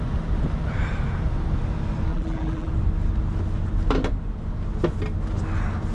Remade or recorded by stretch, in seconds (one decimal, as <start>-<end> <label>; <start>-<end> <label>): 0.0-2.1 recorded; 2.1-2.7 remade; 2.7-5.9 recorded